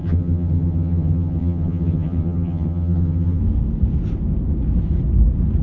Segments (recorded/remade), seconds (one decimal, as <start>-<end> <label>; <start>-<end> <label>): 0.0-3.4 remade; 3.4-5.6 recorded